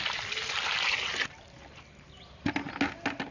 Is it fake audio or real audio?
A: real